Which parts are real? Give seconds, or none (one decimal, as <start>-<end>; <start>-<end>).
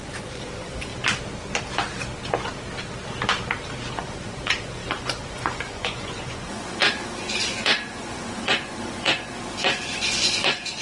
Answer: 0.9-3.9